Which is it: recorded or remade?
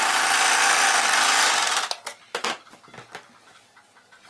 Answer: recorded